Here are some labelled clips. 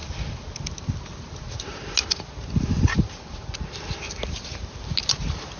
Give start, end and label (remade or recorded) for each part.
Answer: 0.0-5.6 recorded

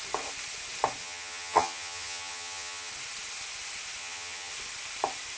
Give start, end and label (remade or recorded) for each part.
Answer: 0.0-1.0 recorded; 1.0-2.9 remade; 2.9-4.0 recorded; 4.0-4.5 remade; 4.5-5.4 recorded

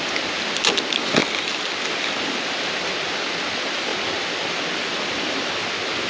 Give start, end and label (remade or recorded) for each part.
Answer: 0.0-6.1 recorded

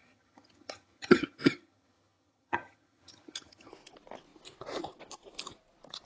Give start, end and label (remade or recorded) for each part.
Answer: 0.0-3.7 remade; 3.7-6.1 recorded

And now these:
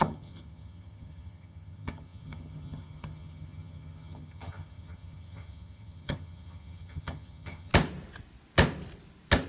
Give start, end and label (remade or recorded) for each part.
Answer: 0.0-7.7 remade; 7.7-9.5 recorded

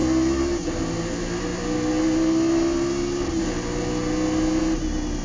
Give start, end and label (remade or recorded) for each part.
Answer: 0.0-5.2 recorded